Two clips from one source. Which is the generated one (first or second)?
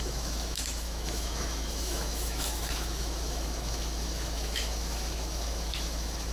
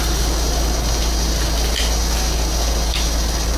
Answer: first